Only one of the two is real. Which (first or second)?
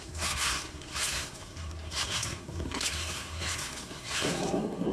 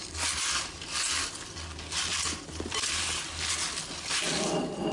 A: second